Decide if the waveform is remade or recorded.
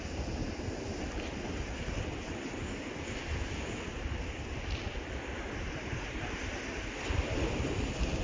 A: recorded